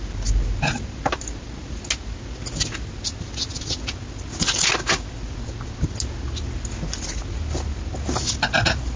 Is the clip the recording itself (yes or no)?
yes